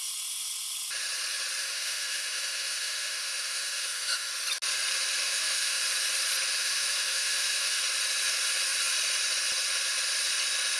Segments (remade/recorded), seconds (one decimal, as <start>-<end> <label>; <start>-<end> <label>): 0.0-1.6 recorded; 1.6-4.3 remade; 4.3-5.2 recorded; 5.2-5.8 remade; 5.8-6.6 recorded; 6.6-7.8 remade; 7.8-10.8 recorded